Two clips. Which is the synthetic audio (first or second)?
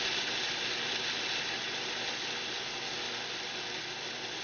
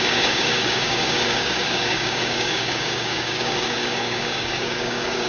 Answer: second